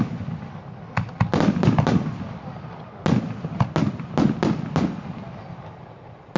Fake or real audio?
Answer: real